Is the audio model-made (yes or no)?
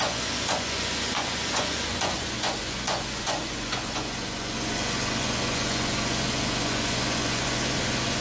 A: yes